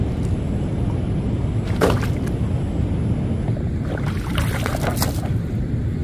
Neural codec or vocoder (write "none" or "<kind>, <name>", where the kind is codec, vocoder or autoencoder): none